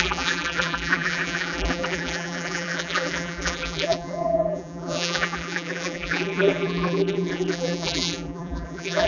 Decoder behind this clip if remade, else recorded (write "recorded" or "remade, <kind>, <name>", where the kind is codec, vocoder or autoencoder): remade, vocoder, BigVGAN v2